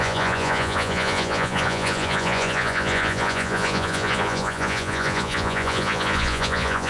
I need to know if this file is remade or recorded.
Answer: remade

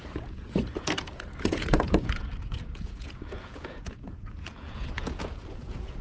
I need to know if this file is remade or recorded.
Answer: remade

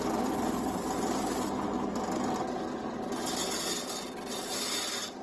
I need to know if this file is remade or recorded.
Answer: recorded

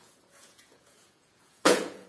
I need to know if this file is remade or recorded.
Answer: remade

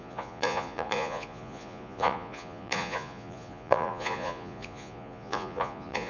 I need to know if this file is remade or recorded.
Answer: remade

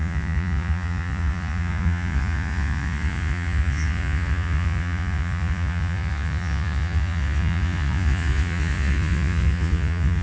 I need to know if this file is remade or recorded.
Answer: remade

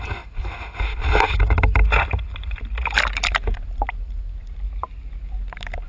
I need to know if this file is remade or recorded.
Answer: recorded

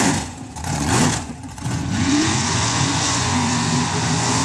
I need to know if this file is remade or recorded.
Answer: remade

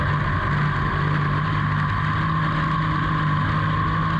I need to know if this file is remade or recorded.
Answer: recorded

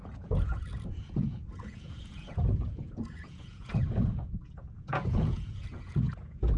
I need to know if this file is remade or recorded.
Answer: remade